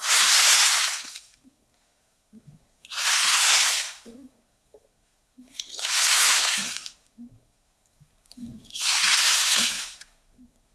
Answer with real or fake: fake